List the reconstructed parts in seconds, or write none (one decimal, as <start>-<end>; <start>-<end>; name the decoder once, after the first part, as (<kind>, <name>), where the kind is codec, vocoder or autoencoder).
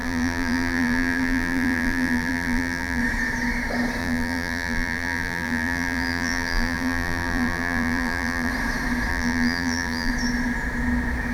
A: 0.0-3.0 (vocoder, BigVGAN v2); 4.0-8.5; 9.1-10.1